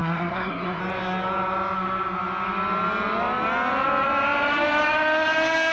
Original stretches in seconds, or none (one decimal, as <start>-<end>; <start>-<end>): 0.8-5.7